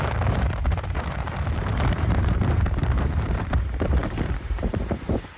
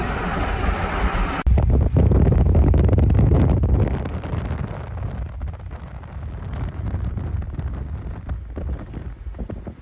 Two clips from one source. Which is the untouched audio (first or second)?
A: second